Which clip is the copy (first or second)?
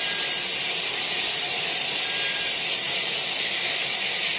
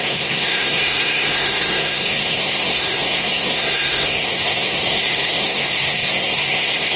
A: second